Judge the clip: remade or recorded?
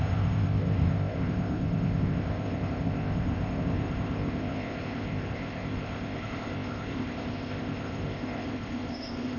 remade